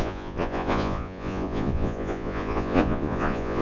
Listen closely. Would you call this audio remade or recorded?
remade